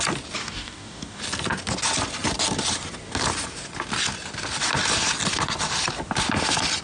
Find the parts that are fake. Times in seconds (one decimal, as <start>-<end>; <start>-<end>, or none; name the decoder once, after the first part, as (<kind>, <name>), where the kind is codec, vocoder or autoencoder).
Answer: 0.4-1.2 (codec, DAC)